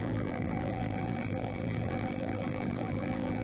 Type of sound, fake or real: fake